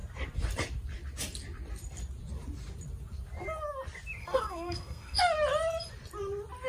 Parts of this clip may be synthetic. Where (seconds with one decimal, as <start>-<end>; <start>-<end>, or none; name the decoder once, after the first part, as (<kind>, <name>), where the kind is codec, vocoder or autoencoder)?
4.2-5.2 (codec, SNAC)